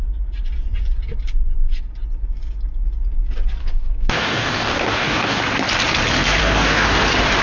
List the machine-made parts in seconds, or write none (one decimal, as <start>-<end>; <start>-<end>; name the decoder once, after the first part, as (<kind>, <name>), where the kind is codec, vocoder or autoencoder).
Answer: 3.6-5.4 (codec, DAC); 6.4-7.0